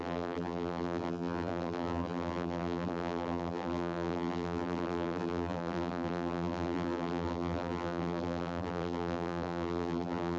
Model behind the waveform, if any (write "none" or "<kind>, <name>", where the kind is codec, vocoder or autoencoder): vocoder, BigVGAN v2